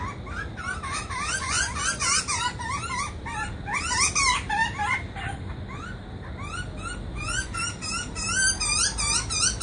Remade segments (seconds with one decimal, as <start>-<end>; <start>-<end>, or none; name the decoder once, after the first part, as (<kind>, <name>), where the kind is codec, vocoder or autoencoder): 1.4-2.2 (vocoder, Vocos); 7.1-7.6